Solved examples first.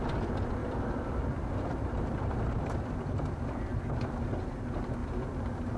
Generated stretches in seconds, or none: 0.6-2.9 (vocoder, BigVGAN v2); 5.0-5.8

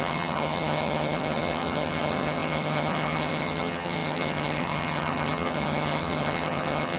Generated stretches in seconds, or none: 0.0-7.0 (vocoder, HiFi-GAN)

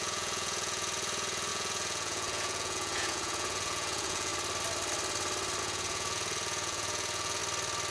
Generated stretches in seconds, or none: 0.0-4.3 (vocoder, Vocos); 5.6-7.4